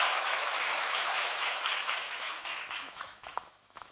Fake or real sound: fake